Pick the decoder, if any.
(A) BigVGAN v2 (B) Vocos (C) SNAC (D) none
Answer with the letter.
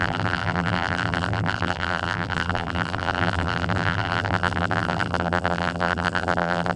A